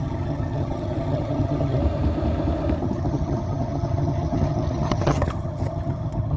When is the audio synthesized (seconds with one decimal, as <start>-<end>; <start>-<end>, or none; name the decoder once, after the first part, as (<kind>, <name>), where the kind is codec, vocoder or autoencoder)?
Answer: 0.0-1.8 (vocoder, HiFi-GAN); 2.8-6.4